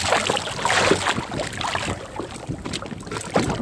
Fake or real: real